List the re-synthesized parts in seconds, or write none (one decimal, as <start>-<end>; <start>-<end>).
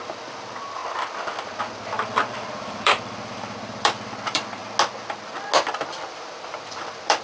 0.0-4.6; 5.9-7.2